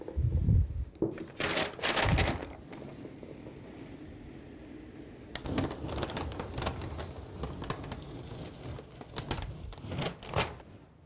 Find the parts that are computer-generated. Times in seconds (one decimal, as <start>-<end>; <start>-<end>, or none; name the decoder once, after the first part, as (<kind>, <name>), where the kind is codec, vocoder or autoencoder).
none